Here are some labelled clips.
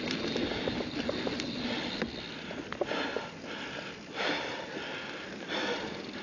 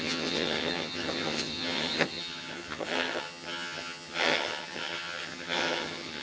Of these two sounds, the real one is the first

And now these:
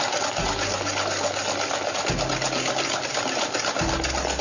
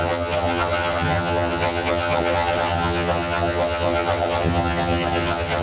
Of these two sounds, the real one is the first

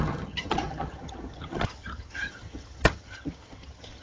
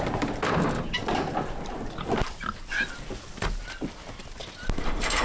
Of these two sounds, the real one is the second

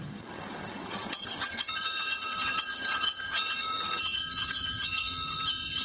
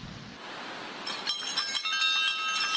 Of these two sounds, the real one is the second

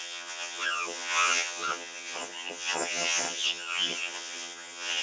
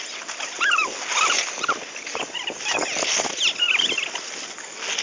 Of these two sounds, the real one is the second